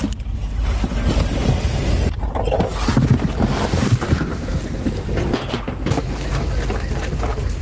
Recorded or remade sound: recorded